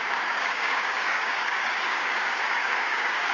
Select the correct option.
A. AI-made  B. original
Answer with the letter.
A